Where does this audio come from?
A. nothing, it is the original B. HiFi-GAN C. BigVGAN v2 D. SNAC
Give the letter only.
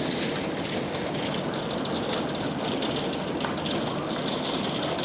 A